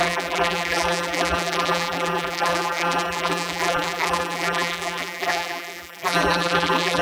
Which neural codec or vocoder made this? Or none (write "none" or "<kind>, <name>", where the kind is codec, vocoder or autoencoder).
vocoder, BigVGAN v2